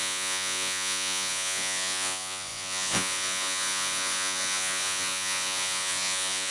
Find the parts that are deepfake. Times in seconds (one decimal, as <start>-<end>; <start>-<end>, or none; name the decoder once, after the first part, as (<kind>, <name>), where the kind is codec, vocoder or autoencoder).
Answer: 0.0-6.5 (vocoder, Vocos)